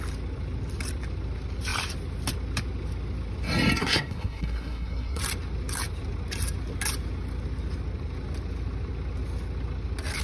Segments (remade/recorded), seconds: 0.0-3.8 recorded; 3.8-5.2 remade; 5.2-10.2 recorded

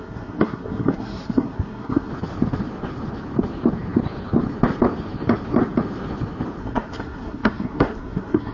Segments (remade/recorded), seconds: 0.0-2.1 remade; 2.1-6.6 recorded; 6.6-8.5 remade

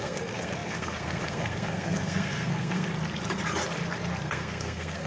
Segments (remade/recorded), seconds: 0.0-2.9 remade; 2.9-4.2 recorded; 4.2-5.1 remade